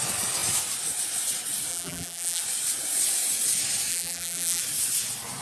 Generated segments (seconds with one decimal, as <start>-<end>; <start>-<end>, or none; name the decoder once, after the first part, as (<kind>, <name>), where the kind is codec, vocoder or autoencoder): 1.7-2.4 (vocoder, BigVGAN v2); 3.9-4.6